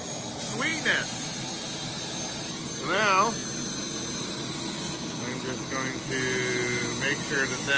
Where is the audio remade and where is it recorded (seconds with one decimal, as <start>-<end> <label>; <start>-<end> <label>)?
0.0-7.8 recorded